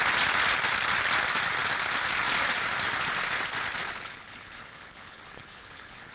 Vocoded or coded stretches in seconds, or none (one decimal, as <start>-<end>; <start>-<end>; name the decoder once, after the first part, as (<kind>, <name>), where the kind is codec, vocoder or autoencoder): 3.8-6.1 (codec, HILCodec)